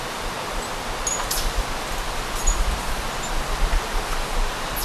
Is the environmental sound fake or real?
real